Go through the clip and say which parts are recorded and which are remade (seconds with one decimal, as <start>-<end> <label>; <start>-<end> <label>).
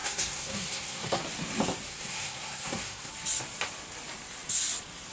0.0-1.2 remade; 1.2-1.9 recorded; 1.9-3.1 remade; 3.1-5.1 recorded